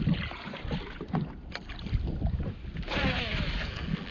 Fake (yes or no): no